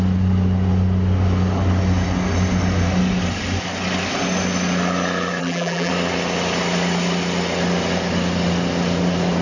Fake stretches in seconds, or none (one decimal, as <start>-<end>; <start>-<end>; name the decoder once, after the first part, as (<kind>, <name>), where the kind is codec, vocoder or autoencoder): 5.4-5.9 (vocoder, BigVGAN v2)